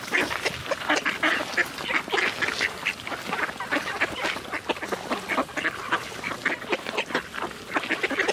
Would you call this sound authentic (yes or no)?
yes